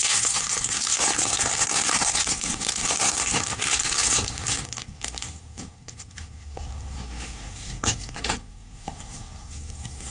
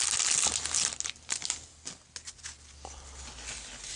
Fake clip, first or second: first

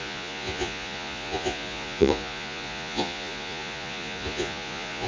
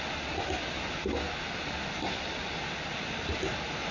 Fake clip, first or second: first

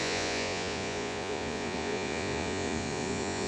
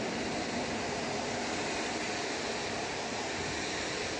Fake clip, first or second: first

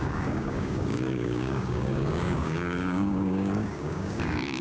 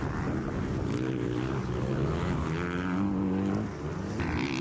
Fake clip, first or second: first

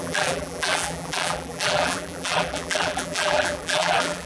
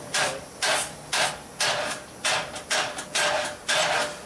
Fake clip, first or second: first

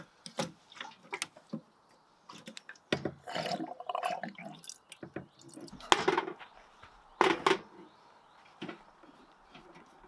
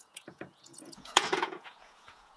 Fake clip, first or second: second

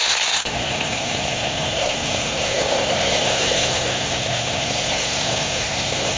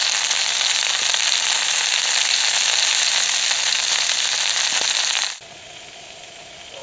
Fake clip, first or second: first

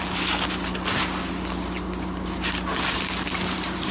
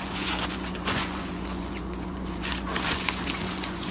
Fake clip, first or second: second